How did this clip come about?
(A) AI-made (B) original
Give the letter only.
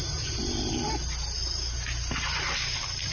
B